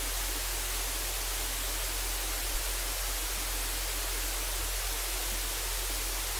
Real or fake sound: real